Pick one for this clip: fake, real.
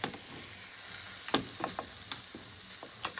real